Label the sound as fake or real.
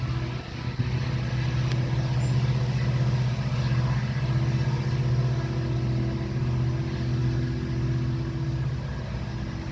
real